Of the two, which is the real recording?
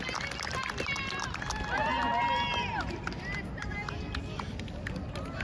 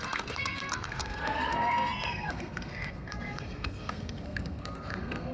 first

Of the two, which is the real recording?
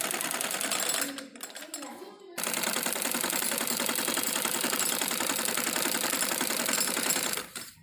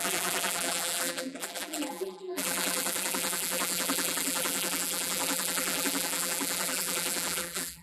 first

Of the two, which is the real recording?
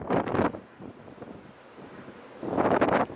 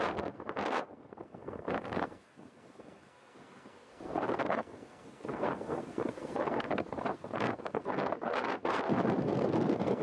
first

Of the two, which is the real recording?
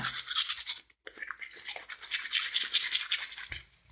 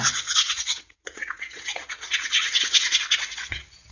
first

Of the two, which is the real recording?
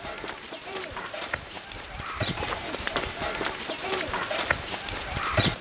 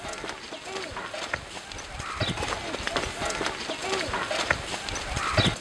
second